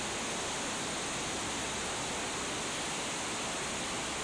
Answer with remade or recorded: recorded